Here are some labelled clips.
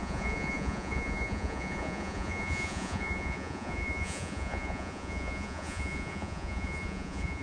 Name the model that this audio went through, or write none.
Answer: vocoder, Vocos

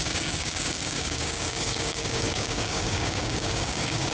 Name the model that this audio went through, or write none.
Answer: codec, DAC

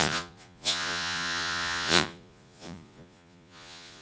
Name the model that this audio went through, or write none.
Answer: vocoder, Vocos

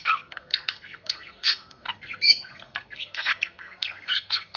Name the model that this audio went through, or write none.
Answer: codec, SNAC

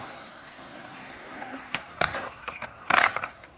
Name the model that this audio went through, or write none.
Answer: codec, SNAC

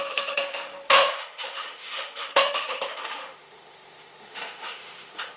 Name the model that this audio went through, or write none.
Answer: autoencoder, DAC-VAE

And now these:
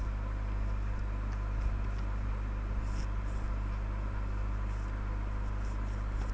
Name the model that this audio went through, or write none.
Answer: none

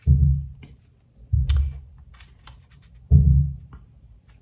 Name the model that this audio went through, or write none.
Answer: none